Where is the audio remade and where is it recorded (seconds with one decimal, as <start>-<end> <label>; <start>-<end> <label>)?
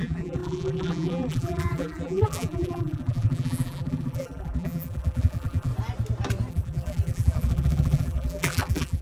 0.0-5.7 remade; 5.7-6.5 recorded; 6.5-9.0 remade